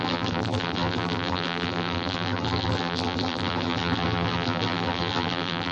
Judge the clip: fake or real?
fake